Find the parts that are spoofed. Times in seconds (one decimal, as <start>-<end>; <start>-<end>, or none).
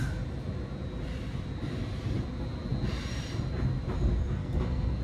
4.2-5.0